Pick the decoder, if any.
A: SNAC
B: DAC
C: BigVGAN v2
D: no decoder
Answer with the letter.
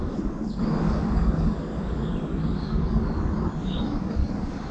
B